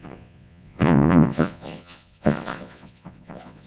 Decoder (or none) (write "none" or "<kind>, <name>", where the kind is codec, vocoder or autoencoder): vocoder, Vocos